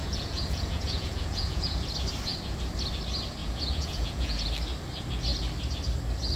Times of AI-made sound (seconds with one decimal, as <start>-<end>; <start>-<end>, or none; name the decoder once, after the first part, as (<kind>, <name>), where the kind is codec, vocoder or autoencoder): 0.0-1.8 (vocoder, Vocos); 3.4-4.5